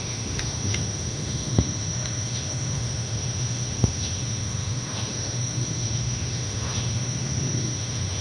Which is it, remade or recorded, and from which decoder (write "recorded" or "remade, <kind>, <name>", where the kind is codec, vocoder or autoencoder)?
remade, autoencoder, DAC-VAE